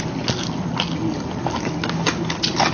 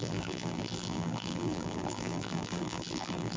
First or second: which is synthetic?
second